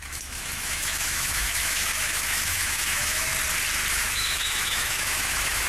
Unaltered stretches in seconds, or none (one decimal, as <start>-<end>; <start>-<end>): 3.3-3.9